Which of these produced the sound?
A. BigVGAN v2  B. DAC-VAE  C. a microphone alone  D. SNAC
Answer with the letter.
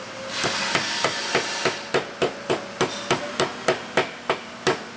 C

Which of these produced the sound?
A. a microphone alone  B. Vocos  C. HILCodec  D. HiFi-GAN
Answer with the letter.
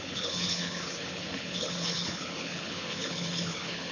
C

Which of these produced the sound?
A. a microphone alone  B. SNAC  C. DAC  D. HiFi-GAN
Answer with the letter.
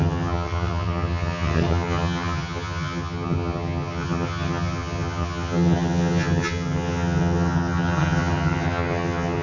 D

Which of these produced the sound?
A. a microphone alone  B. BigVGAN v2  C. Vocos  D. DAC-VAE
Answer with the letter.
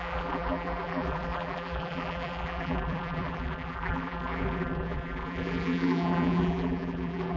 B